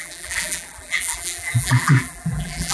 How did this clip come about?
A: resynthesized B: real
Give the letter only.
A